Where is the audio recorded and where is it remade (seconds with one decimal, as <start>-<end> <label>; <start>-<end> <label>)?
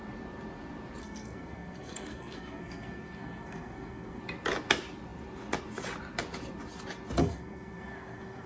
0.0-1.0 recorded; 1.0-4.2 remade; 4.2-7.2 recorded; 7.2-8.5 remade